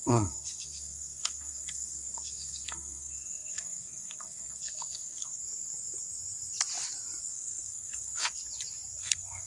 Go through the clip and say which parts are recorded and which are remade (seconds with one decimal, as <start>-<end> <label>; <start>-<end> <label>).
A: 0.0-5.4 remade; 5.4-7.2 recorded; 7.2-8.4 remade; 8.4-9.0 recorded; 9.0-9.5 remade